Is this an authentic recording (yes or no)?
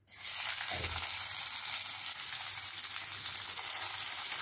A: yes